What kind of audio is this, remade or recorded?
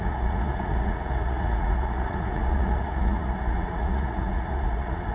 remade